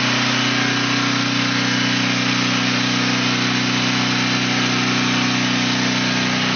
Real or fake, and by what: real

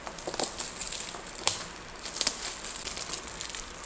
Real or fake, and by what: real